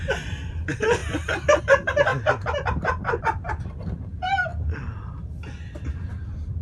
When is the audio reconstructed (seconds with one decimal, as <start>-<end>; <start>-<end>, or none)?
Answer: 0.0-1.0; 1.6-4.5; 5.9-6.6